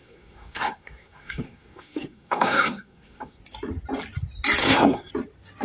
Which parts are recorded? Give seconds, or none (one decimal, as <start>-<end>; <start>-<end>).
3.4-4.6; 5.1-5.6